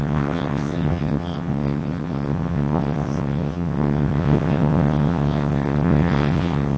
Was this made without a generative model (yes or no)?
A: no